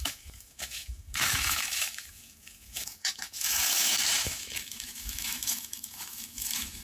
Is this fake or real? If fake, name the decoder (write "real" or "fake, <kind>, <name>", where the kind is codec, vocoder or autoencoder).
fake, autoencoder, DAC-VAE